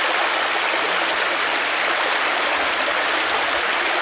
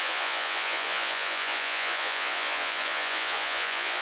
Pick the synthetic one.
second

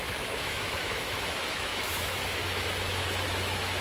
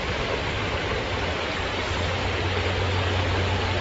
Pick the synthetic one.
first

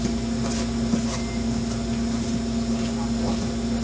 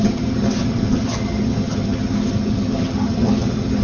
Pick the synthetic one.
second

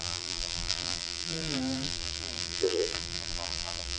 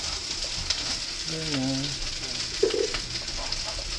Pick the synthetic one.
first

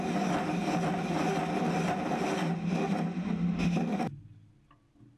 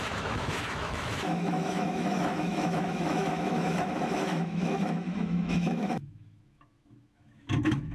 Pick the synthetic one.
second